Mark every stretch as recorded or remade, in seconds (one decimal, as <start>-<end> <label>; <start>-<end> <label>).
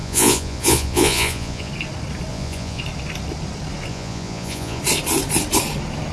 0.0-1.7 remade; 1.7-2.3 recorded; 2.3-2.8 remade; 2.8-3.9 recorded; 3.9-4.8 remade; 4.8-6.1 recorded